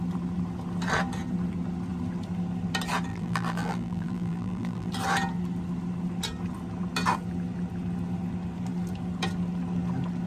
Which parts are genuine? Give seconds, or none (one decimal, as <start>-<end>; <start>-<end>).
0.0-3.1; 4.9-10.3